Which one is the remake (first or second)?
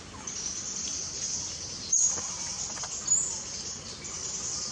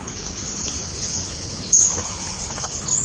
second